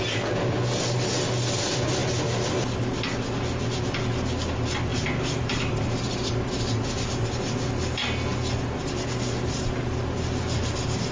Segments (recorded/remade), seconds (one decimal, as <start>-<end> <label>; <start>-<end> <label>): 0.0-11.1 recorded